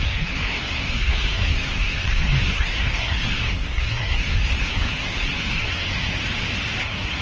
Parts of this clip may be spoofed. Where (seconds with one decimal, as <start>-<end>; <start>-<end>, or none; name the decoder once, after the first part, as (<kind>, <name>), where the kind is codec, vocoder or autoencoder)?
0.0-6.2 (codec, SNAC); 6.8-7.2